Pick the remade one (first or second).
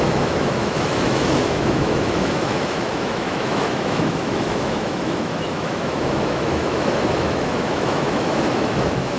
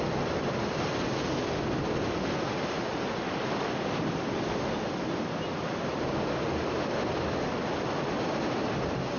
first